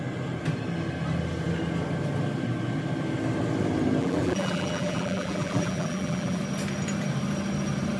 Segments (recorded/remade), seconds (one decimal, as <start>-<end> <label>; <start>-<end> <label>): 0.0-4.0 recorded; 4.0-6.4 remade; 6.4-8.0 recorded